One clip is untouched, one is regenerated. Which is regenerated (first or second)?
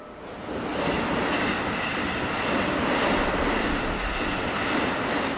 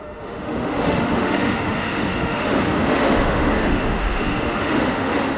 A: second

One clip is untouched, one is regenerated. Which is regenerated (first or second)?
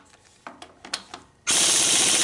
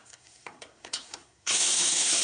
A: second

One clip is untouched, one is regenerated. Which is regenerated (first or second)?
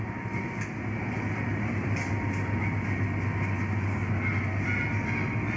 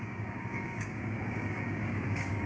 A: second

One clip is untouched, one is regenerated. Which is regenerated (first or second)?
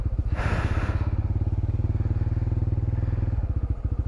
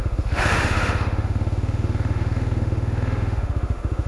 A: second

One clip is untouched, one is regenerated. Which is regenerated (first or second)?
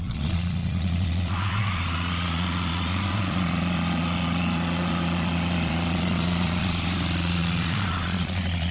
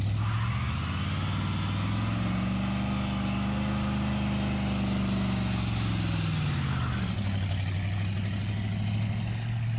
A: first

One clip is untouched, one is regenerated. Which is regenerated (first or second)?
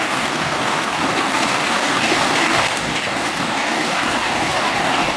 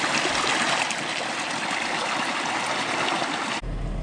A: first